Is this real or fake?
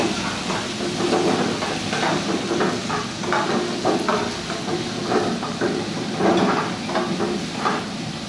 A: real